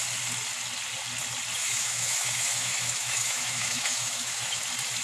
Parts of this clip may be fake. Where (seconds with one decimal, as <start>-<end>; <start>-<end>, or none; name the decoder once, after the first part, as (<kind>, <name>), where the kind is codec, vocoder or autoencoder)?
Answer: 1.6-4.6 (autoencoder, DAC-VAE)